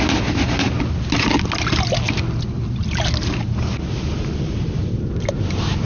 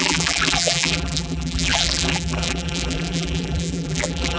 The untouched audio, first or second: first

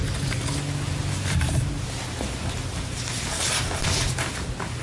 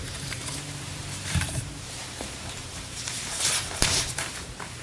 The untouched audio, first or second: first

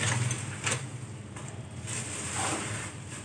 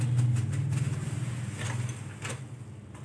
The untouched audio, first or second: second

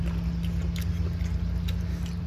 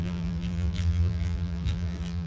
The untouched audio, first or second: first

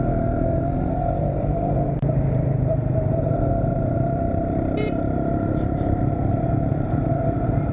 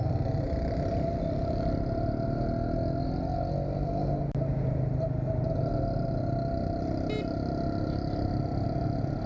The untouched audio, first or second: second